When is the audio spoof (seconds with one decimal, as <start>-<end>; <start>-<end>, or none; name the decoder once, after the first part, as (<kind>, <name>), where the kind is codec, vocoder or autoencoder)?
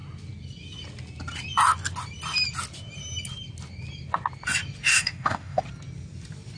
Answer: 4.9-5.6 (autoencoder, DAC-VAE)